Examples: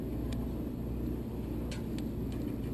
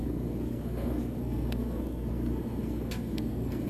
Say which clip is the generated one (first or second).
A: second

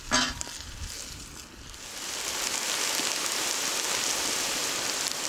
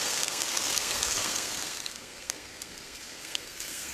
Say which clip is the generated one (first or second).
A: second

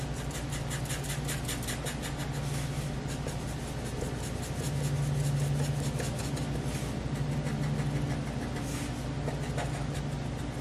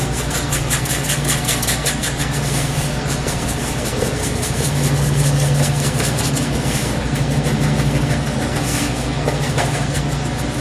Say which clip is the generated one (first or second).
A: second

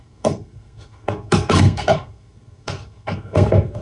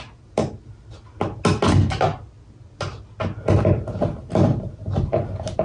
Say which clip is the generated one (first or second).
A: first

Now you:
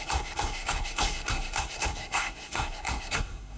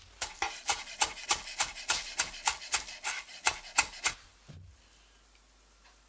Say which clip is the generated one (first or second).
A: first